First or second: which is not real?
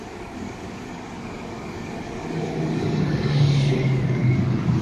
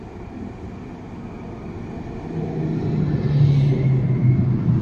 first